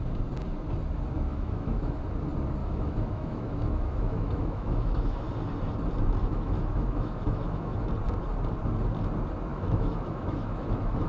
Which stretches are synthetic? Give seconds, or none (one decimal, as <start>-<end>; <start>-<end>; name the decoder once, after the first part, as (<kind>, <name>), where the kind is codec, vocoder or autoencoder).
1.3-2.0 (autoencoder, DAC-VAE); 2.6-5.2; 6.2-7.7; 9.5-11.1